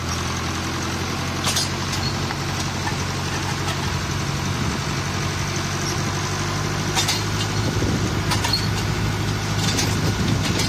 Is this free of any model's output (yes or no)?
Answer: yes